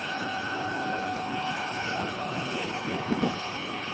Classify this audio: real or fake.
fake